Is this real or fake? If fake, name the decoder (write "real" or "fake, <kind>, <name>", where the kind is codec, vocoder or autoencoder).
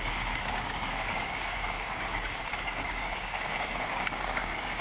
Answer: fake, codec, DAC